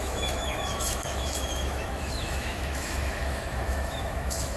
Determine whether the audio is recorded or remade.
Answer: remade